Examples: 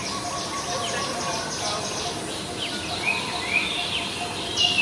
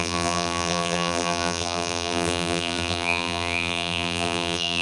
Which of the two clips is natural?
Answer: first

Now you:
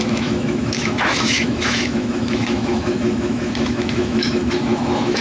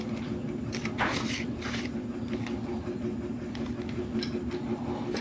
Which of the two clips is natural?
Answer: second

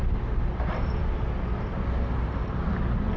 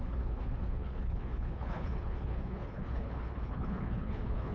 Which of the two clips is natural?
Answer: first